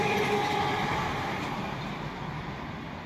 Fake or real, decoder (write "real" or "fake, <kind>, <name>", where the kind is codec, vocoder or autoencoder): real